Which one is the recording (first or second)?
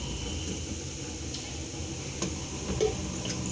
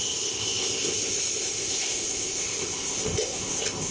first